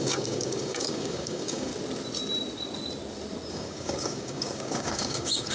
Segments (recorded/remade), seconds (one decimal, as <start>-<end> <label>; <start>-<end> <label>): 0.0-1.7 remade; 1.7-3.5 recorded; 3.5-5.5 remade